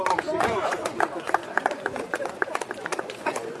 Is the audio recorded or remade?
remade